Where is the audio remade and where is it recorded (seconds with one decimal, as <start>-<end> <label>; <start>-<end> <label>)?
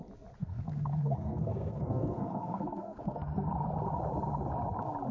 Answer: 0.0-0.4 recorded; 0.4-3.5 remade; 3.5-5.1 recorded